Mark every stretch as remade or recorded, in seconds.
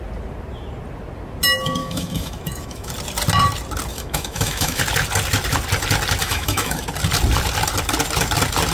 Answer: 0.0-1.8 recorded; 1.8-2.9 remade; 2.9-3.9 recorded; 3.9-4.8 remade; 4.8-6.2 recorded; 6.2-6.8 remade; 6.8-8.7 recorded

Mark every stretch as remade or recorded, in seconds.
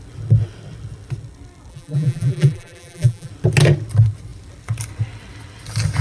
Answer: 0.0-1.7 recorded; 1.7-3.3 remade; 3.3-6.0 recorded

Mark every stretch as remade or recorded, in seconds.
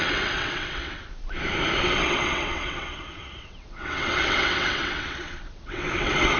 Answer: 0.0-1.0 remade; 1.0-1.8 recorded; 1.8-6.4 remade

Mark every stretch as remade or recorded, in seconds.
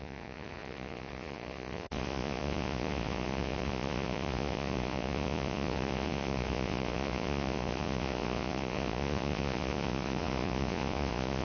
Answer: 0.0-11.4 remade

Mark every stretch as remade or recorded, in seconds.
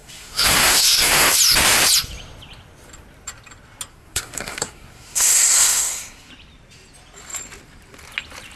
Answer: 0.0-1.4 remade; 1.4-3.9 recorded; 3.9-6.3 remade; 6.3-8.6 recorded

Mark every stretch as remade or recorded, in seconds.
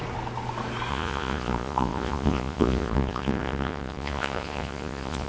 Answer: 0.0-0.9 recorded; 0.9-5.3 remade